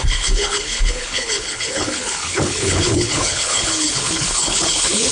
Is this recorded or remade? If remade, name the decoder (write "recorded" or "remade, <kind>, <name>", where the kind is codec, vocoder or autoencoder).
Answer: remade, codec, HILCodec